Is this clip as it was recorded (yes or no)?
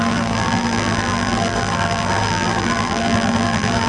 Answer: no